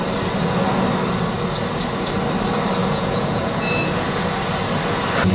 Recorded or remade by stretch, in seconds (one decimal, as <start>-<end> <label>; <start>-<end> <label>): 0.0-2.8 recorded; 2.8-4.2 remade; 4.2-5.3 recorded